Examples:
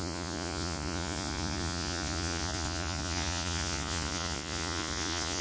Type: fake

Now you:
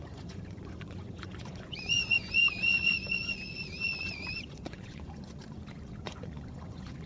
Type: fake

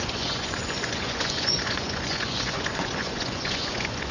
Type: fake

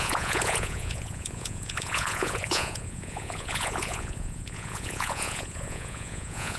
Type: fake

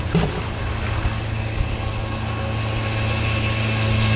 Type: real